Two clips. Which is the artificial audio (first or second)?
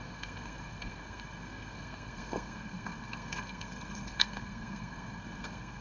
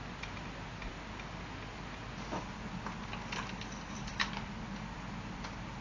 first